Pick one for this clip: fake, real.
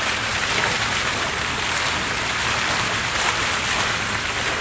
real